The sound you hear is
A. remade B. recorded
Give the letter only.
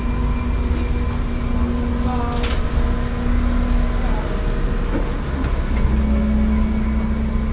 B